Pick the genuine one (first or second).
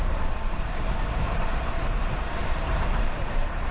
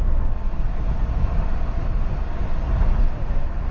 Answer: second